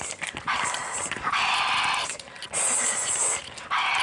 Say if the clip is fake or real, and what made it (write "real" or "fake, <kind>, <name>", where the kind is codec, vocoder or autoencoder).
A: real